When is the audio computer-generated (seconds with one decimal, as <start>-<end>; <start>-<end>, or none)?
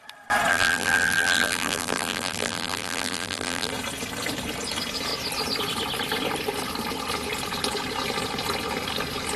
0.5-3.7